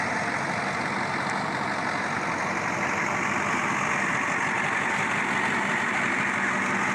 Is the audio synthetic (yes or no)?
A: no